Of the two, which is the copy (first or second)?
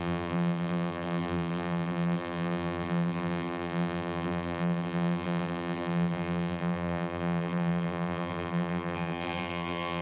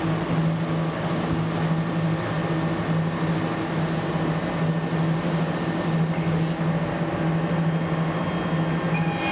first